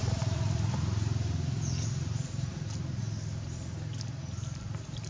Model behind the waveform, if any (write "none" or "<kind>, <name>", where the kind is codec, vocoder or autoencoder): none